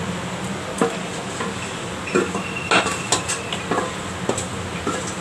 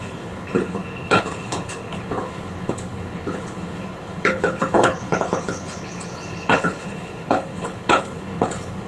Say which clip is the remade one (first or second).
second